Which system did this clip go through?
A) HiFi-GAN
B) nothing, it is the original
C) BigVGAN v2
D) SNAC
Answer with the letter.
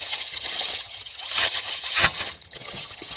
A